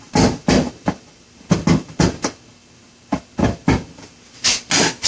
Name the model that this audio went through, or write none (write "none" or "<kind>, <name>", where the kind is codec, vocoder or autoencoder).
none